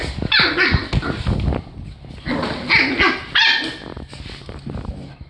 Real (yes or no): yes